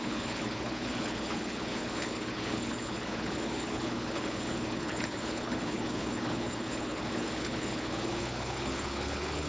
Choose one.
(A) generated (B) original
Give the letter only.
A